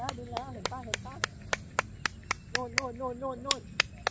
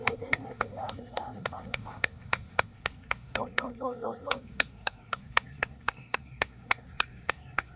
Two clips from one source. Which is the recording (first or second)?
first